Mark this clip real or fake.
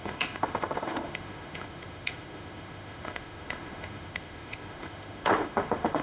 fake